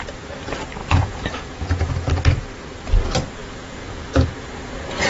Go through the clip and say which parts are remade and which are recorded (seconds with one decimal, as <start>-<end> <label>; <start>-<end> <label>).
0.0-0.8 recorded; 0.8-1.9 remade; 1.9-3.4 recorded; 3.4-5.1 remade